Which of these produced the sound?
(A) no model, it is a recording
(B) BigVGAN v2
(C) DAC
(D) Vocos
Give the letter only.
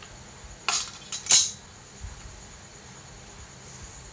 A